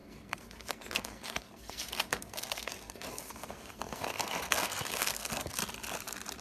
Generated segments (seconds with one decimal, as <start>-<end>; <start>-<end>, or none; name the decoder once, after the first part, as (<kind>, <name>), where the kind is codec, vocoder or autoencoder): 0.0-5.6 (codec, SNAC)